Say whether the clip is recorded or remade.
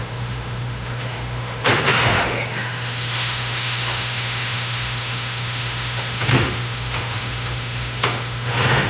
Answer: remade